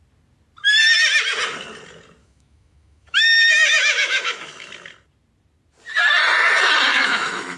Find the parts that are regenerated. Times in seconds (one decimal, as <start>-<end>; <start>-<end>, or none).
2.2-4.7; 6.9-7.6